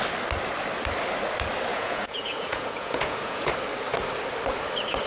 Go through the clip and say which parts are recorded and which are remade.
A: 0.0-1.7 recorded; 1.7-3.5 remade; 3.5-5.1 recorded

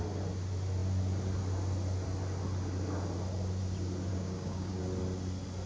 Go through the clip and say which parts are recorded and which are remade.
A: 0.0-4.1 recorded; 4.1-4.8 remade; 4.8-5.7 recorded

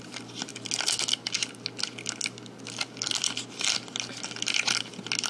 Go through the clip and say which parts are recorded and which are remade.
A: 0.0-5.3 recorded

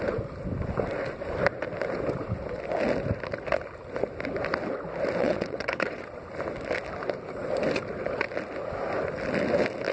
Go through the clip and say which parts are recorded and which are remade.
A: 0.0-5.2 recorded; 5.2-6.1 remade; 6.1-9.9 recorded

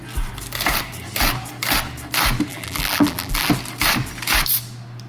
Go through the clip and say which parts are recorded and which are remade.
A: 0.0-2.5 recorded; 2.5-3.5 remade; 3.5-5.1 recorded